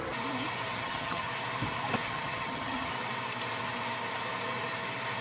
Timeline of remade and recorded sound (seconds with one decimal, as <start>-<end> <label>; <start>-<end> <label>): 0.0-0.7 recorded; 0.7-1.3 remade; 1.3-2.0 recorded; 2.0-2.9 remade; 2.9-5.2 recorded